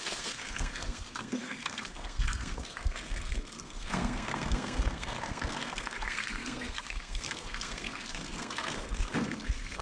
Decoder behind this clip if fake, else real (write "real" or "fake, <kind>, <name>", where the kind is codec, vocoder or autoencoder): fake, codec, SNAC